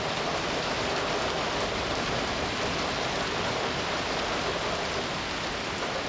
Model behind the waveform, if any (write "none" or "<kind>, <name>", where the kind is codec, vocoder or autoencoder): none